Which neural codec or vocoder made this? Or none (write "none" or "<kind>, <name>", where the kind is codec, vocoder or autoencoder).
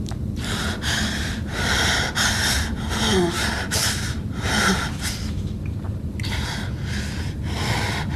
none